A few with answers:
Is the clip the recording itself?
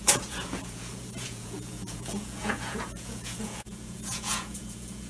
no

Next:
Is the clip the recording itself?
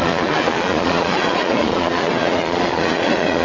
no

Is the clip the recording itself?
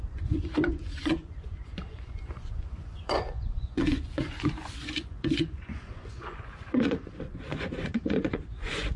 no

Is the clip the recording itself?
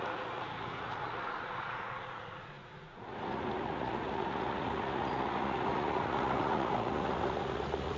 no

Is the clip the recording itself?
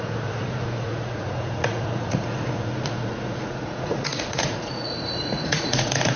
no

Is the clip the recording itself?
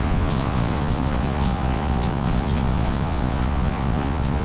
no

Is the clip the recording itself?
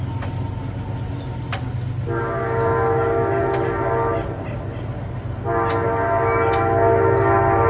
yes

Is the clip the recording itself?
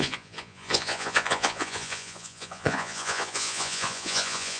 no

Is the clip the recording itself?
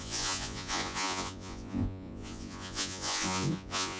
no